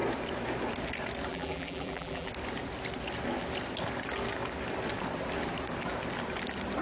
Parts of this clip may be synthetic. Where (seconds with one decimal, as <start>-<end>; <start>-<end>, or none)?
1.3-2.3